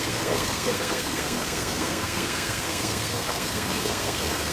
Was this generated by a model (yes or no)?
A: yes